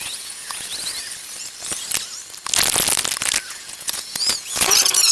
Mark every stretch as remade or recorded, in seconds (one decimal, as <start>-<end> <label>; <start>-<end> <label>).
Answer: 0.0-0.7 remade; 0.7-3.5 recorded; 3.5-5.1 remade